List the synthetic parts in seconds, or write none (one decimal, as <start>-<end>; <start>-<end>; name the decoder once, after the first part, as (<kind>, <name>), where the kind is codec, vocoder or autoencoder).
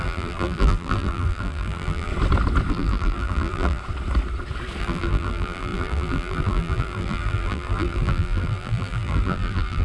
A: 0.0-2.1 (vocoder, BigVGAN v2); 2.7-3.8; 4.8-9.8